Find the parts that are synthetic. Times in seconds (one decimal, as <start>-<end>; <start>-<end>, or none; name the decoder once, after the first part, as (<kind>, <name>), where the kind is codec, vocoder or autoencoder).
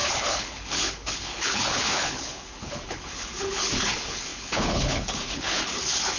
0.0-6.2 (codec, HILCodec)